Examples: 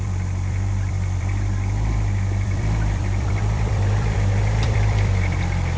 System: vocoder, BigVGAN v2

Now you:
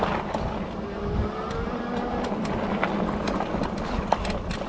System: none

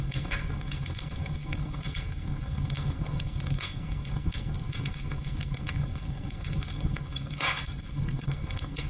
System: codec, SNAC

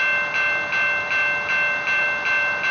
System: none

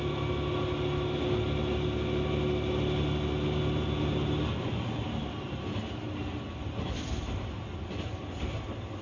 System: none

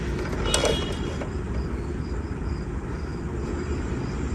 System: none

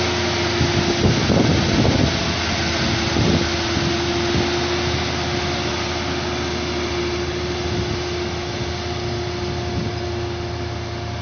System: none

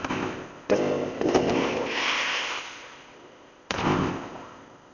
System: codec, ZipCodec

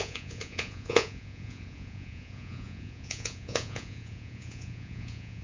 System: vocoder, Vocos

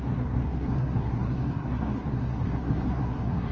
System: codec, SNAC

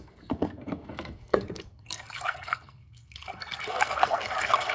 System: codec, SNAC